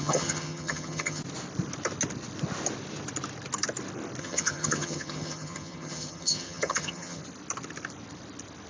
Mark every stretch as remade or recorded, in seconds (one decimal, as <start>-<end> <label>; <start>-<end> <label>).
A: 0.0-1.2 remade; 1.2-4.2 recorded; 4.2-7.2 remade; 7.2-8.7 recorded